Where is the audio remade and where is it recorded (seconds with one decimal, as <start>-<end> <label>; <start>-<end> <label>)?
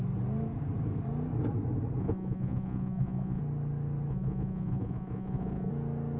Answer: 0.0-2.0 recorded; 2.0-3.4 remade; 3.4-4.1 recorded; 4.1-5.7 remade; 5.7-6.2 recorded